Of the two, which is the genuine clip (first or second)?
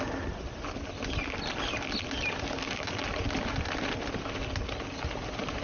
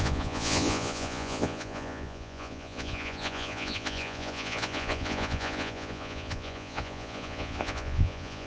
first